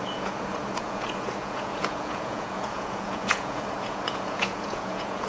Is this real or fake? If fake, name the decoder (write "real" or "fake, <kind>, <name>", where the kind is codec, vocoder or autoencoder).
fake, vocoder, Vocos